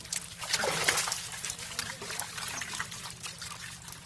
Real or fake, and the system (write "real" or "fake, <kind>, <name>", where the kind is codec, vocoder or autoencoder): real